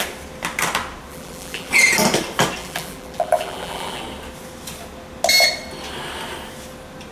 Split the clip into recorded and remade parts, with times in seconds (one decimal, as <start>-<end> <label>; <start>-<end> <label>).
0.0-1.1 recorded; 1.1-1.7 remade; 1.7-2.6 recorded; 2.6-4.0 remade; 4.0-7.1 recorded